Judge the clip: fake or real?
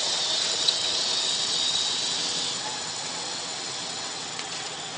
fake